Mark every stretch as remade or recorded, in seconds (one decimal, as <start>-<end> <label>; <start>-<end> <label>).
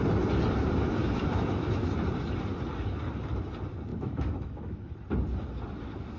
0.0-1.0 recorded; 1.0-1.9 remade; 1.9-3.9 recorded; 3.9-4.9 remade; 4.9-6.2 recorded